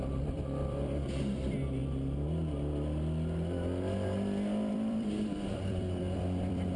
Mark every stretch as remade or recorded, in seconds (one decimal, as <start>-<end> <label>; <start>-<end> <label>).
0.0-1.8 remade; 1.8-4.7 recorded; 4.7-6.8 remade